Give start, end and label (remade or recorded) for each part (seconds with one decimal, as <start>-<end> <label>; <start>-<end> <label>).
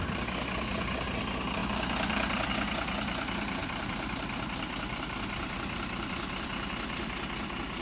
0.0-1.6 recorded; 1.6-2.5 remade; 2.5-3.6 recorded; 3.6-7.8 remade